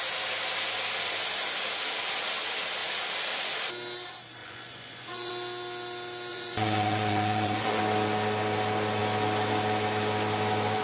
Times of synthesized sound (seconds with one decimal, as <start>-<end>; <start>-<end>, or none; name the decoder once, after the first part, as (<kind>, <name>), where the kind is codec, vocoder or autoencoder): 4.4-5.3 (vocoder, Vocos); 6.3-7.8